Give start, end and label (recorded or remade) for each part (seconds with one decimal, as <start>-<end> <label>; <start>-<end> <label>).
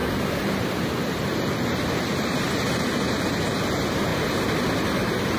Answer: 0.0-4.1 remade; 4.1-4.8 recorded; 4.8-5.4 remade